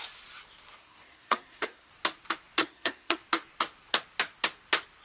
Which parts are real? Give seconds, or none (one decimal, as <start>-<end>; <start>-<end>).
0.0-0.8; 1.9-2.6; 3.2-5.0